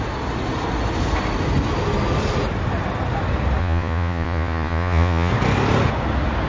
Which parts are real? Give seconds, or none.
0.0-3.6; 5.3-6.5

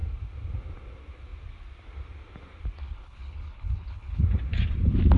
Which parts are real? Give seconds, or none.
0.0-2.8; 4.2-5.2

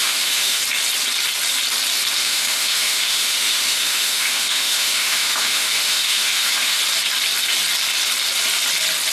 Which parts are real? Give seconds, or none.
0.6-2.2; 6.8-9.1

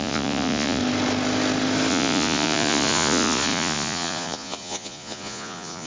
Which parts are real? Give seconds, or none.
0.8-1.9

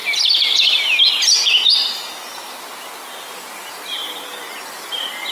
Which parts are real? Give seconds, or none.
0.0-3.2; 4.0-5.3

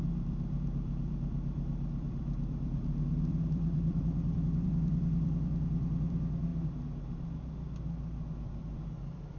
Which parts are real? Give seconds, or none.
6.5-8.3